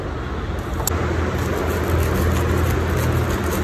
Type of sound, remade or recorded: recorded